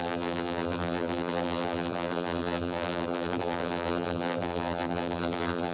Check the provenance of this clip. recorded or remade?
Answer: remade